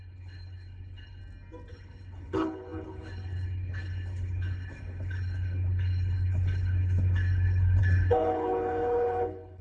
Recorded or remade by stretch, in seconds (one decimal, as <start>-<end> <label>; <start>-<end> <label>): 0.0-1.2 remade; 1.2-1.7 recorded; 1.7-9.6 remade